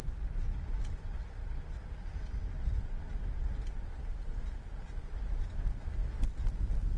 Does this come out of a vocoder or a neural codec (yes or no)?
no